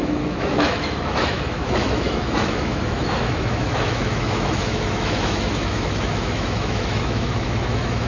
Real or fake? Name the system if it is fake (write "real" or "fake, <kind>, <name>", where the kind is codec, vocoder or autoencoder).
fake, autoencoder, DAC-VAE